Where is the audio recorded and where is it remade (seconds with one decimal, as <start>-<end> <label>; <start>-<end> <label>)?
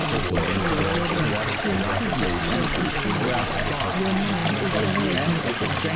0.0-2.4 recorded; 2.4-2.9 remade; 2.9-6.0 recorded